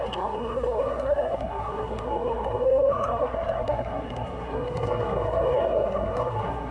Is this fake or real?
fake